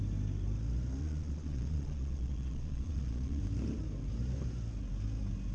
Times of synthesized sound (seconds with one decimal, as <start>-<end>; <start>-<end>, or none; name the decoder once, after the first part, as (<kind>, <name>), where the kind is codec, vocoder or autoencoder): 1.0-3.4 (vocoder, Vocos)